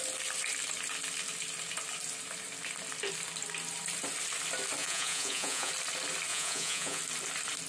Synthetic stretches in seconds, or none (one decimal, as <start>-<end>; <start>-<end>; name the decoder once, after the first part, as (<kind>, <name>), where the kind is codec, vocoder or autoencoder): 4.8-5.7 (vocoder, Vocos); 6.3-7.0